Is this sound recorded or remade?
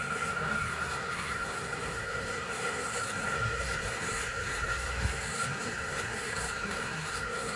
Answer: remade